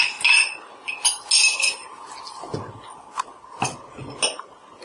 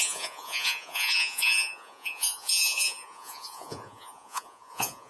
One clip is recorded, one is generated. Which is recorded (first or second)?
first